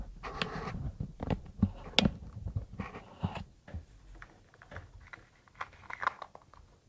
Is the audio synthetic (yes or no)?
no